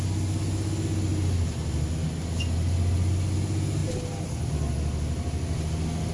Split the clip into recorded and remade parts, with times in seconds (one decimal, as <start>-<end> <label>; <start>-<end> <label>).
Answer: 0.0-6.1 recorded